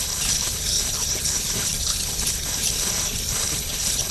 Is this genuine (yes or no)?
no